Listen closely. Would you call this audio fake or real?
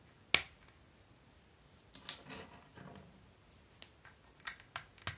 real